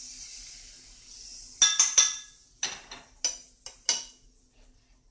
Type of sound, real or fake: real